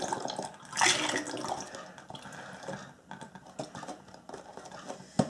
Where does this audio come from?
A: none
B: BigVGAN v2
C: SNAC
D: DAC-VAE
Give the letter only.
A